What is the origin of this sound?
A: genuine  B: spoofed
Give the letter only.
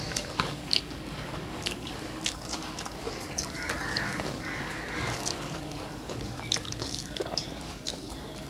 B